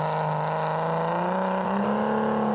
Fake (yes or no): no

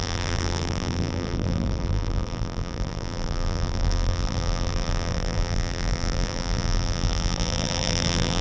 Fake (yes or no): yes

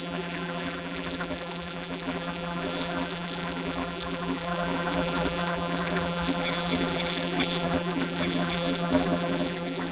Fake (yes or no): yes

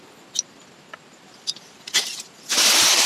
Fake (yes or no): no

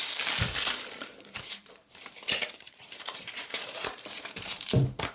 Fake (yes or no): yes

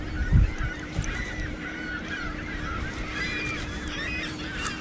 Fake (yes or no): yes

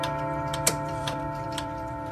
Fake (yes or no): yes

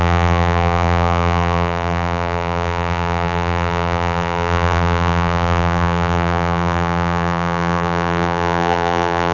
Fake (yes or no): yes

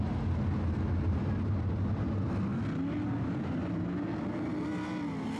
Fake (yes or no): no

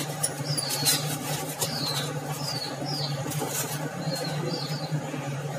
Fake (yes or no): yes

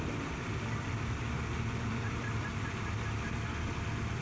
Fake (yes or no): yes